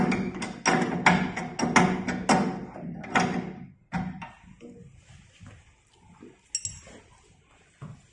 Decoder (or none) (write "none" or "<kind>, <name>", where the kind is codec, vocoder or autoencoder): none